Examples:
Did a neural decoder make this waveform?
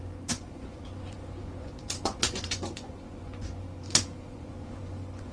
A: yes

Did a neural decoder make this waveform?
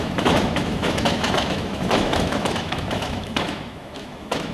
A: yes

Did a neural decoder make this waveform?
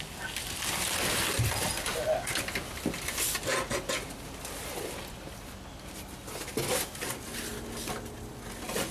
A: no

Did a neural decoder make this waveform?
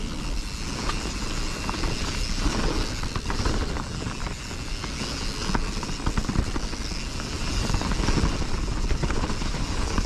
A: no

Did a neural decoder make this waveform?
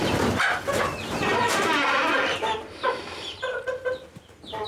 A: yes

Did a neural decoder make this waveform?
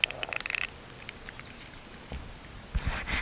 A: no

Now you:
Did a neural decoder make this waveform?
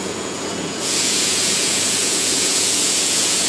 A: yes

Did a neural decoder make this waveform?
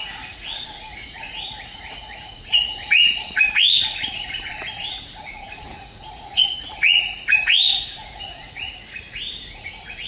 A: yes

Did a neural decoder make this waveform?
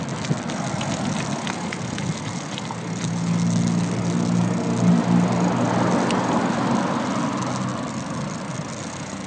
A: no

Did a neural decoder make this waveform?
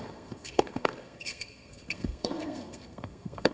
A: yes